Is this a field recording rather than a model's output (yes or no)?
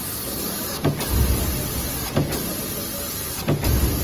yes